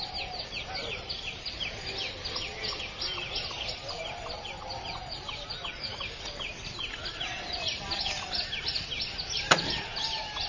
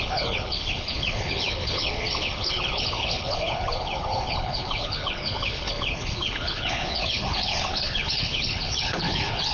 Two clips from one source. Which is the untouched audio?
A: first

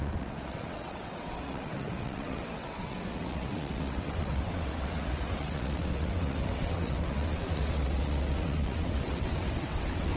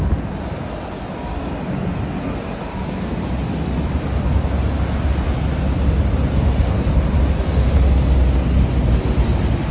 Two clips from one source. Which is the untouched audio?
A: second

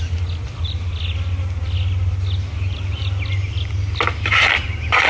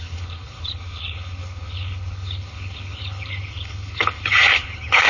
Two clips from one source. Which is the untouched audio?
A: first